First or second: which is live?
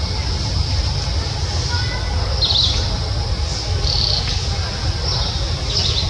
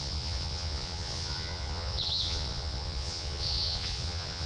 first